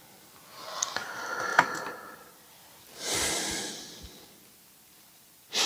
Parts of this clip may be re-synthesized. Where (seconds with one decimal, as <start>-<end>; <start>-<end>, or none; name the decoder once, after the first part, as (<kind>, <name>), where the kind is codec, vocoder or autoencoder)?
none